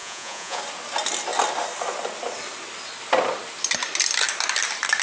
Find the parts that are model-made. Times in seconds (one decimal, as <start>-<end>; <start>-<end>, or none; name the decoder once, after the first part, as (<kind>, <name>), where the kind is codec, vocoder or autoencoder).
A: 0.0-0.6 (vocoder, Vocos)